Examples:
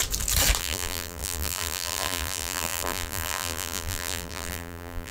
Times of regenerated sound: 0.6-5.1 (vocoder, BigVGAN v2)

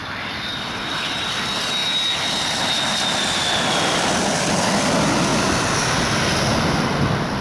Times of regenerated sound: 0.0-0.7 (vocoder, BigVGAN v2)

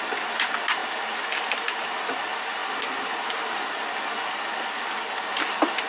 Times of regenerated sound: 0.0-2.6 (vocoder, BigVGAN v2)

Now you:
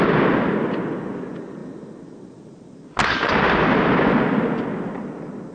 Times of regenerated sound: none

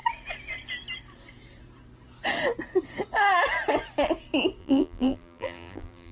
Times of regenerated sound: 4.6-6.1 (vocoder, BigVGAN v2)

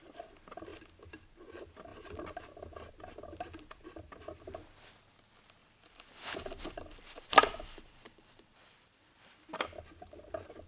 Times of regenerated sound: 5.6-9.8 (vocoder, BigVGAN v2)

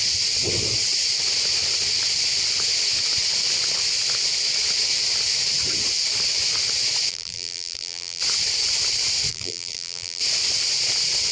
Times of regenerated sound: 7.1-8.2 (vocoder, BigVGAN v2); 9.3-10.2